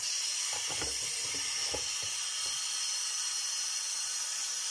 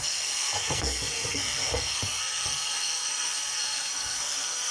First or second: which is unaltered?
first